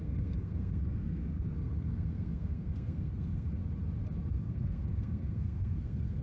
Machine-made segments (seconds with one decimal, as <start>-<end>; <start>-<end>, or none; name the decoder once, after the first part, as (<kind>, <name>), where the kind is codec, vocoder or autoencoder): 0.0-3.6 (codec, SNAC); 4.3-6.2